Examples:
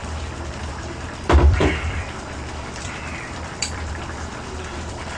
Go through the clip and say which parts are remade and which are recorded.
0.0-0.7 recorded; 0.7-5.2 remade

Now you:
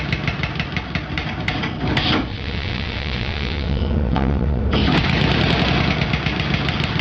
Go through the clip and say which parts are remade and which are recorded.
0.0-2.3 recorded; 2.3-4.6 remade; 4.6-7.0 recorded

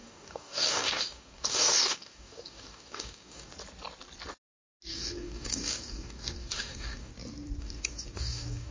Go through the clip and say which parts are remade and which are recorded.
0.0-3.5 remade; 3.5-4.9 recorded; 4.9-7.1 remade; 7.1-7.6 recorded; 7.6-8.7 remade

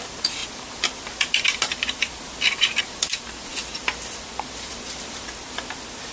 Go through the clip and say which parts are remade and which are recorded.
0.0-6.1 remade

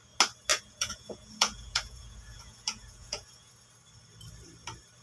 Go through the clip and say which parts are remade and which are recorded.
0.0-0.5 recorded; 0.5-3.5 remade; 3.5-5.0 recorded

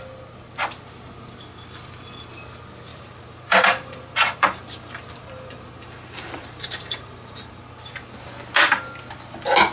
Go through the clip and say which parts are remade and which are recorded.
0.0-2.9 recorded; 2.9-7.6 remade; 7.6-9.7 recorded

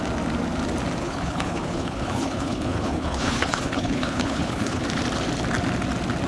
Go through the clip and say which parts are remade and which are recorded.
0.0-1.0 recorded; 1.0-4.8 remade; 4.8-6.3 recorded